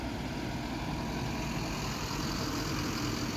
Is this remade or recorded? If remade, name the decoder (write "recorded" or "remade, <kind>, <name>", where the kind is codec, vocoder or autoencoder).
recorded